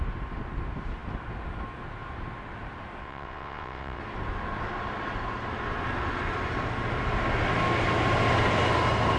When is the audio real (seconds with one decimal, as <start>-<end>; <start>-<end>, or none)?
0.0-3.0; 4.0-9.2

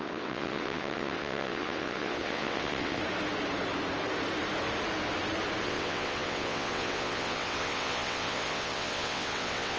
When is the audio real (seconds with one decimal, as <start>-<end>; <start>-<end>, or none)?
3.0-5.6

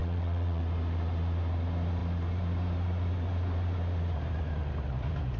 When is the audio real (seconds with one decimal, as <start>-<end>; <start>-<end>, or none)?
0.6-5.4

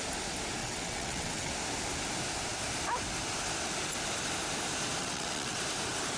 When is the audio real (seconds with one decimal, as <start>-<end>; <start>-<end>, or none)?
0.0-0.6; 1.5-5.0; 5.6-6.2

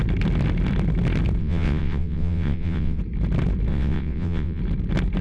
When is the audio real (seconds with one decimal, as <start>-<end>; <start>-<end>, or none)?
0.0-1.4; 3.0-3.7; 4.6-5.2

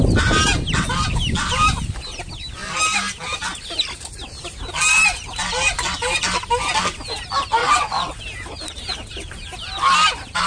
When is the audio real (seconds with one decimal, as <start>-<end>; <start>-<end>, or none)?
0.0-7.6; 8.2-10.5

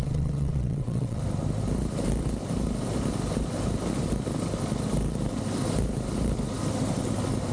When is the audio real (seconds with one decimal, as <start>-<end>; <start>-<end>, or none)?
1.2-7.5

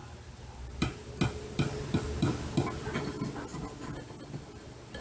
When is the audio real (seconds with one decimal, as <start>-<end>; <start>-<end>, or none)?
0.0-5.0